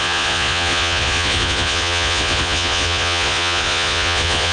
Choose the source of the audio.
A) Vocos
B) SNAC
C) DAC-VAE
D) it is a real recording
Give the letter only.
A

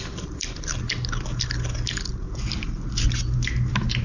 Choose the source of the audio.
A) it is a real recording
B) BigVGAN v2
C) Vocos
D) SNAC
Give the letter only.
A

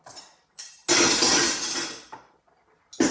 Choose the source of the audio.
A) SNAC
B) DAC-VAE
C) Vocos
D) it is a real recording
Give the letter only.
D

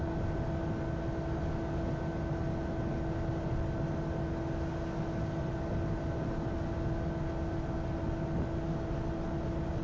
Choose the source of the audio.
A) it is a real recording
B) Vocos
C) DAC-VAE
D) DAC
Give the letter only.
A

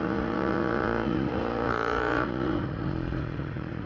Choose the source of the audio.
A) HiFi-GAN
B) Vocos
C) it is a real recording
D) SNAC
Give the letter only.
B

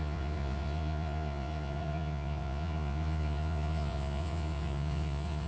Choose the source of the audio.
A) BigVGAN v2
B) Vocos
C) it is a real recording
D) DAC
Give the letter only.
B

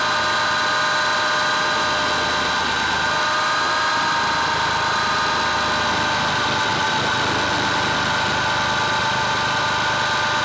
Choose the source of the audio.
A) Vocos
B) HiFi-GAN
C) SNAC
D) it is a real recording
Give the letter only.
D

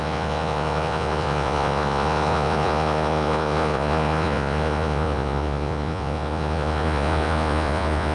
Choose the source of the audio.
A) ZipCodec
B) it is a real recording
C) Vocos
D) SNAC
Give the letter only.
C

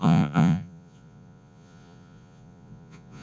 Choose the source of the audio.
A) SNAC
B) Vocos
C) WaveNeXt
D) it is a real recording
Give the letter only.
B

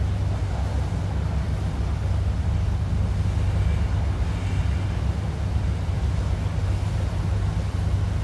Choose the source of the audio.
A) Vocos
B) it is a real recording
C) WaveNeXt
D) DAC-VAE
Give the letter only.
B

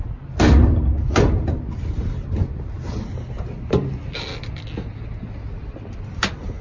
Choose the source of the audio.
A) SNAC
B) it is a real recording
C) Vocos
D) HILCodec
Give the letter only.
B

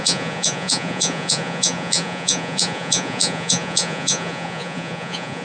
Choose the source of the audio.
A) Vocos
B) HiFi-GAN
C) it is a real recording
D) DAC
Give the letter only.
A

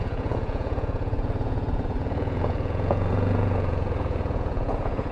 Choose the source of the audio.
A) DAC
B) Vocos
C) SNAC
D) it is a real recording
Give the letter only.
B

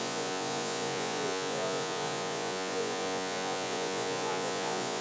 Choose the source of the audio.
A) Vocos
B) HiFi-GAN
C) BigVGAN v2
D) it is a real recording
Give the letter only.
A